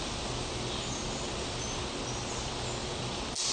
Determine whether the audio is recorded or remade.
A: recorded